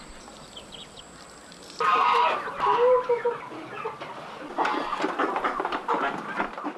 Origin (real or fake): real